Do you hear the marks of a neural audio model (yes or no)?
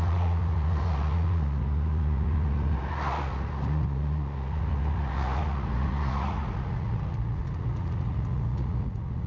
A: yes